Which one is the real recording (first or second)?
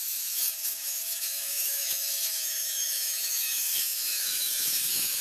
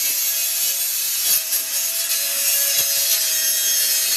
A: second